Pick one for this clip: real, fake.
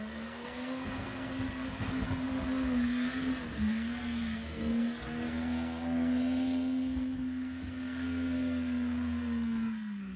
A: fake